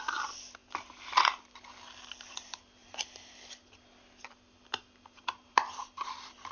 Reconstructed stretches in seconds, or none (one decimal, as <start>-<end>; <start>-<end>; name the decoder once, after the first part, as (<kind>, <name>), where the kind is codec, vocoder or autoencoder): 0.0-0.6 (vocoder, BigVGAN v2); 1.1-6.5